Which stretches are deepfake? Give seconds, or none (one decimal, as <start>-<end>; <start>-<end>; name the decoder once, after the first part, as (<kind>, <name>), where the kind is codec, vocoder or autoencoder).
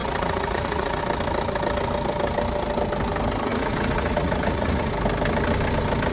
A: 0.0-1.0 (vocoder, Vocos); 3.5-4.9